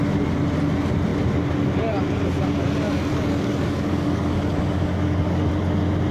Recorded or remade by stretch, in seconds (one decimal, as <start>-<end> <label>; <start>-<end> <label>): 0.0-3.1 recorded; 3.1-5.5 remade; 5.5-6.1 recorded